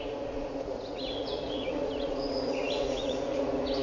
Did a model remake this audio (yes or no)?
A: yes